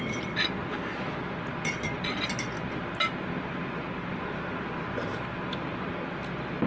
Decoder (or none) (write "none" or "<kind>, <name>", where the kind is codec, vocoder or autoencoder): none